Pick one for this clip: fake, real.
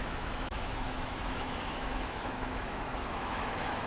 fake